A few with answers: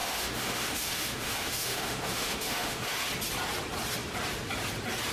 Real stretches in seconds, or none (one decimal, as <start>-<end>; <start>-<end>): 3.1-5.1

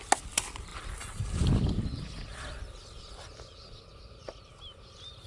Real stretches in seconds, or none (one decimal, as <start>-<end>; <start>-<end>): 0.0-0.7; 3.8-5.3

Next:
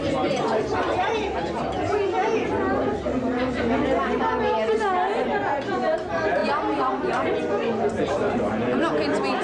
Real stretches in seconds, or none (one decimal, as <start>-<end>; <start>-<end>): 0.0-9.4

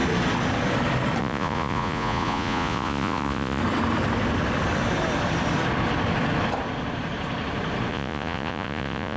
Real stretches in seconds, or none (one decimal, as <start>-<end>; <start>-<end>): 0.0-1.2; 3.6-7.9

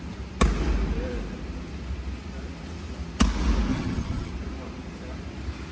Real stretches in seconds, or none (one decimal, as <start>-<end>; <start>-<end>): 0.0-3.7; 4.3-5.7